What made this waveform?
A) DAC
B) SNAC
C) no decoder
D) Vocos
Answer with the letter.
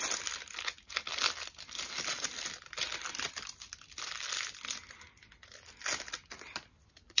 C